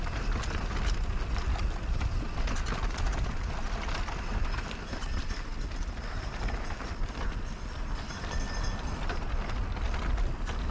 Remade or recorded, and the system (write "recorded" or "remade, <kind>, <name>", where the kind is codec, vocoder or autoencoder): recorded